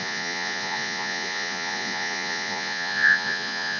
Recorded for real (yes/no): no